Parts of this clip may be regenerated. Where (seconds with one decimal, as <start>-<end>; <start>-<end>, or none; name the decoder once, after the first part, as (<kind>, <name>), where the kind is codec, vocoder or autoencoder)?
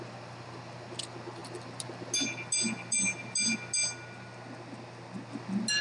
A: none